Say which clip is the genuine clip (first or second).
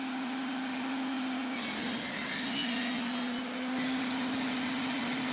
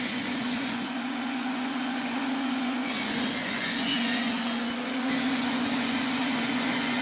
first